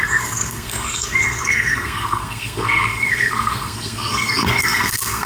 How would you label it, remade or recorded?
remade